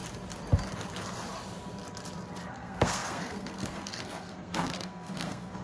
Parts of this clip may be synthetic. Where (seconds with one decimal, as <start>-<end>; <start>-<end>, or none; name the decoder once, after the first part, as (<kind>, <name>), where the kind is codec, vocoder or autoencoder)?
2.5-5.6 (codec, SNAC)